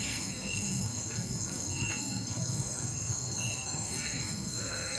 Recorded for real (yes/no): no